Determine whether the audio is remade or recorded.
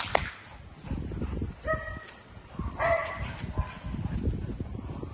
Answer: recorded